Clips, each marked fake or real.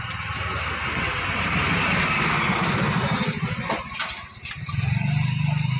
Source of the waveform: real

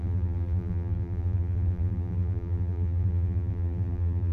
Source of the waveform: fake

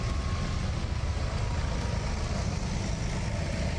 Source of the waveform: real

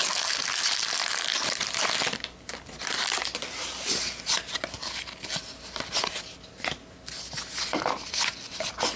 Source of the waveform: real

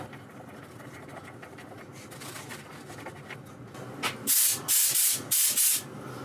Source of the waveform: real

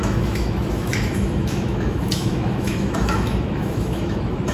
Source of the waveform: fake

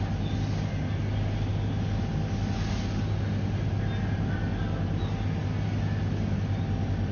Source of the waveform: real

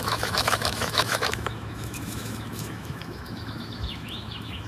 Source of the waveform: fake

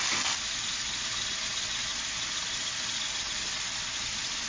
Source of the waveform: real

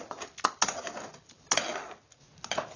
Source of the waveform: real